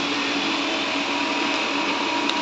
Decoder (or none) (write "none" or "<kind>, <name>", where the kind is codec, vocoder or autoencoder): none